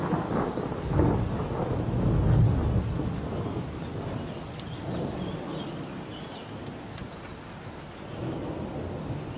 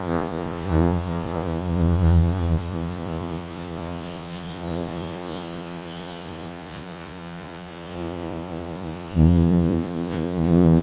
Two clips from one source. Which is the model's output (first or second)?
second